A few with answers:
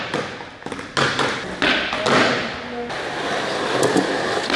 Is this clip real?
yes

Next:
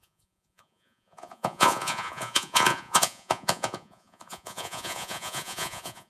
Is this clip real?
no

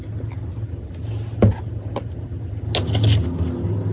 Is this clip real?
yes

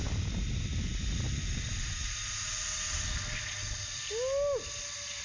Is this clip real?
yes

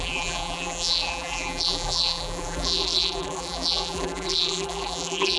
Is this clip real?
no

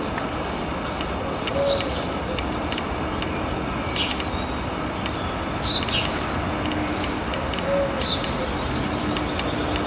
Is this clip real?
yes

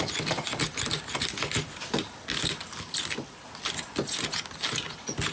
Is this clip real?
yes